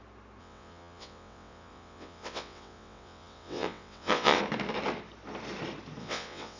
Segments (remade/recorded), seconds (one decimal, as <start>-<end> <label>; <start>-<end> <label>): 0.0-0.4 recorded; 0.4-4.4 remade; 4.4-6.0 recorded; 6.0-6.6 remade